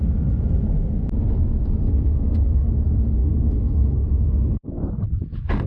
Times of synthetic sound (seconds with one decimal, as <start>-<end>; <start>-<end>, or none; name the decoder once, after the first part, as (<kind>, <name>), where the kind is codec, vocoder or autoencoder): 1.8-2.7 (codec, SNAC); 3.2-4.8